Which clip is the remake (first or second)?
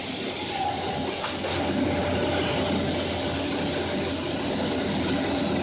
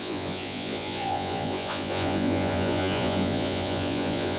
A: second